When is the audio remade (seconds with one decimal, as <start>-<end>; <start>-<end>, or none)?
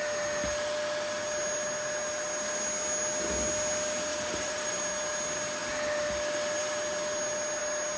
4.1-4.8